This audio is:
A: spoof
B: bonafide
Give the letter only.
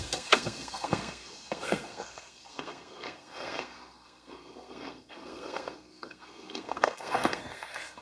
A